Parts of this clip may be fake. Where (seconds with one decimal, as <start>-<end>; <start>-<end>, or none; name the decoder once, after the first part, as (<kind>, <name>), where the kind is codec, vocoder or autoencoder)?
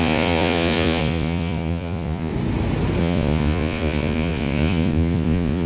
0.0-2.3 (vocoder, Vocos); 3.0-5.7